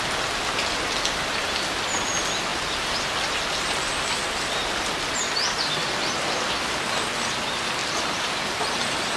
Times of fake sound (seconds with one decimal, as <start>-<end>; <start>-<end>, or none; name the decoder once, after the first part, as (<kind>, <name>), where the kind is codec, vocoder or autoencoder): 2.5-4.9 (vocoder, BigVGAN v2); 7.8-8.4